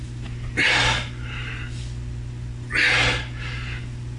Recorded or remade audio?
recorded